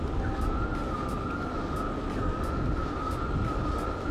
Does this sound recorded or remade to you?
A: recorded